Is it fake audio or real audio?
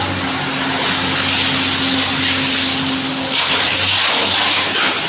real